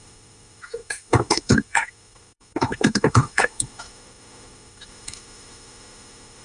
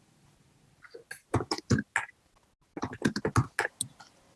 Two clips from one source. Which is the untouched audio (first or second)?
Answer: second